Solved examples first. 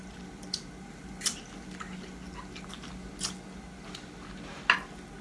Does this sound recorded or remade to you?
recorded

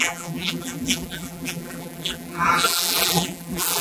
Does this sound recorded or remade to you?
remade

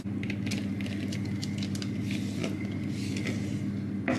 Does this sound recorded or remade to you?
recorded